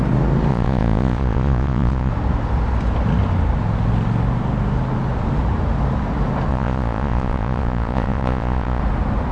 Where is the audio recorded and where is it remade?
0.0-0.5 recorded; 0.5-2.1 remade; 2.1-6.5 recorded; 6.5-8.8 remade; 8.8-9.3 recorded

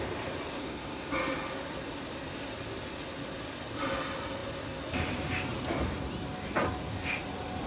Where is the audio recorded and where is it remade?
0.0-0.6 recorded; 0.6-1.1 remade; 1.1-7.7 recorded

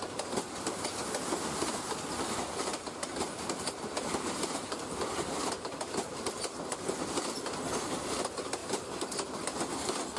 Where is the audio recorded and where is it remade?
0.0-2.7 recorded; 2.7-6.6 remade; 6.6-8.6 recorded; 8.6-9.6 remade; 9.6-10.2 recorded

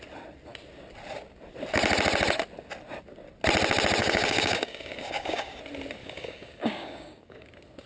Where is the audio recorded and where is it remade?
0.0-4.0 recorded; 4.0-5.6 remade; 5.6-6.0 recorded; 6.0-7.5 remade; 7.5-7.9 recorded

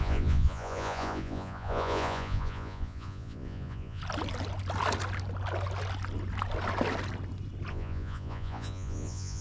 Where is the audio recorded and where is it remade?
0.0-4.0 remade; 4.0-7.7 recorded; 7.7-9.4 remade

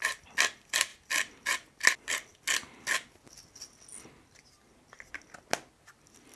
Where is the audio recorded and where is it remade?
0.0-6.4 recorded

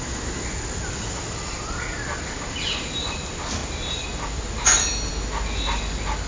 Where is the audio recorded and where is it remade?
0.0-6.3 recorded

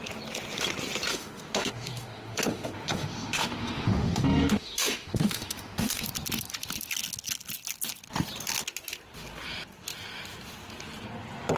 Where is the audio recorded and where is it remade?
0.0-1.1 recorded; 1.1-6.1 remade; 6.1-11.6 recorded